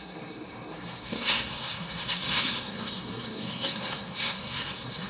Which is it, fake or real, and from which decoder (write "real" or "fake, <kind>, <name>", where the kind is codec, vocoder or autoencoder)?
fake, codec, SNAC